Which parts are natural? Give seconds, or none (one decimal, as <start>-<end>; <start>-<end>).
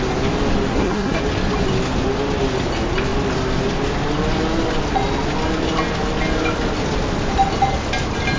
0.0-0.7; 1.2-8.4